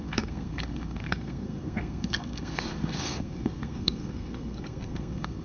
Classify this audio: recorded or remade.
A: remade